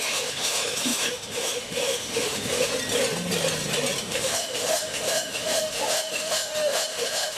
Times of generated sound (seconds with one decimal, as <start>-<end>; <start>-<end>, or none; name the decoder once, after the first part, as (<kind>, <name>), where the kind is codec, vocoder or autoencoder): 0.0-2.7 (autoencoder, DAC-VAE); 4.0-7.4